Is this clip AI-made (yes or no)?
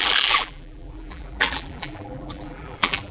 yes